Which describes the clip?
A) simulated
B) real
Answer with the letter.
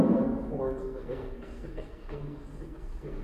A